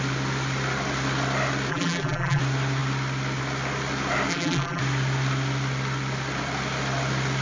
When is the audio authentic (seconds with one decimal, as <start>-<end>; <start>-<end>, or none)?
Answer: 0.0-1.7; 2.4-4.3; 4.8-7.4